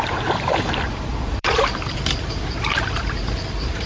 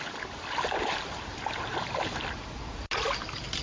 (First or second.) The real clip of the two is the second